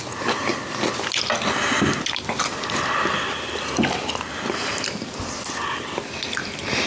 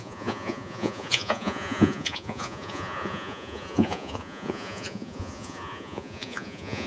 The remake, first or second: second